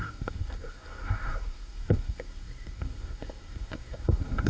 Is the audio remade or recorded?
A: remade